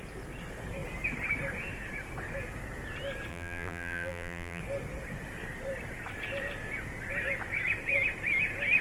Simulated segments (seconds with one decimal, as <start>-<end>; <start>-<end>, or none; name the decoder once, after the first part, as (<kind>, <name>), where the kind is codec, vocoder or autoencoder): 3.3-4.6 (vocoder, BigVGAN v2)